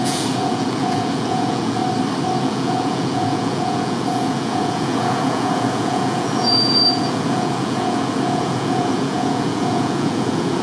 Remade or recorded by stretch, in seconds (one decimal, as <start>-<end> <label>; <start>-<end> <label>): 0.0-1.8 remade; 1.8-2.4 recorded; 2.4-10.6 remade